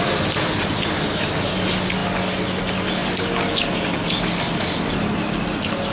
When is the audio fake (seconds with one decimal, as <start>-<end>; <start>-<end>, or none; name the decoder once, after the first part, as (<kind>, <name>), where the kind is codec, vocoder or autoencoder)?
none